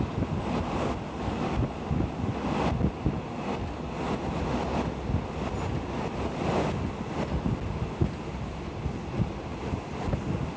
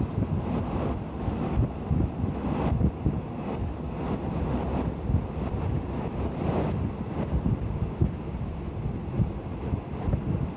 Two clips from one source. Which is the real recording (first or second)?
first